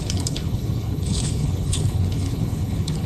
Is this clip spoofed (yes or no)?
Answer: yes